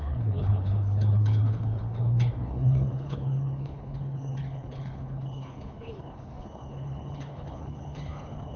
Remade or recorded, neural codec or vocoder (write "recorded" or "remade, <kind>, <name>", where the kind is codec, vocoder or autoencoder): remade, codec, HILCodec